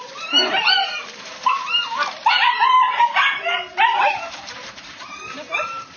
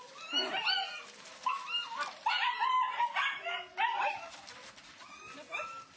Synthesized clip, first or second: first